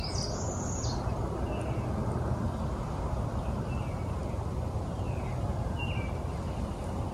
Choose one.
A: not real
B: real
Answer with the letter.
B